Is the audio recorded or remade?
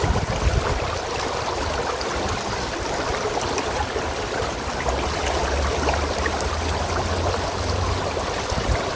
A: recorded